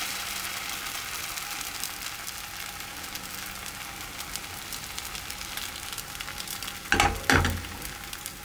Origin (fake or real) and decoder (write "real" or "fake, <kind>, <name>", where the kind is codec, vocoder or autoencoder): real